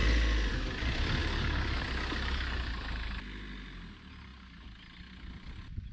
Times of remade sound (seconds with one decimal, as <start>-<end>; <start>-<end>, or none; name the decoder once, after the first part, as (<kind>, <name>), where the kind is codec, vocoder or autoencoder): 1.2-1.8 (codec, DAC)